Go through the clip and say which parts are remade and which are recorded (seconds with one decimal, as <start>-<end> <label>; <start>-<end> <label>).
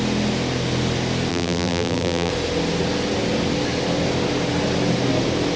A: 0.0-1.3 recorded; 1.3-2.3 remade; 2.3-5.6 recorded